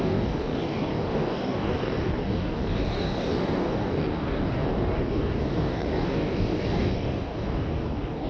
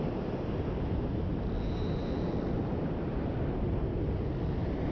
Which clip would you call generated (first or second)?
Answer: first